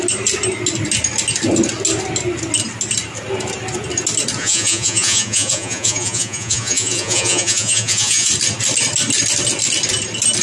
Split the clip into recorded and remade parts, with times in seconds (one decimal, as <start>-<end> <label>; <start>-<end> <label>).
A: 0.0-4.4 recorded; 4.4-8.3 remade; 8.3-10.4 recorded